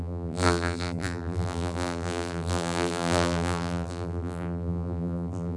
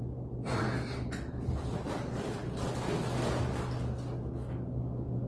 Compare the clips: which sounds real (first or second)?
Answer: second